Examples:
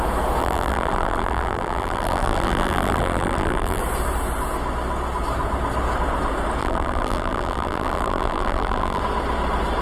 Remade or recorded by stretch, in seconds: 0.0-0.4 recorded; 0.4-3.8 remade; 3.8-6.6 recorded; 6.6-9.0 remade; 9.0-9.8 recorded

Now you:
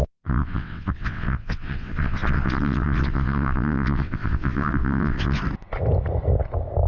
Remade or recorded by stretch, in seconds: 0.0-5.4 remade; 5.4-6.9 recorded

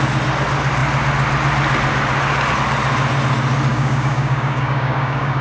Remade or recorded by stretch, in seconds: 0.0-3.7 recorded; 3.7-5.4 remade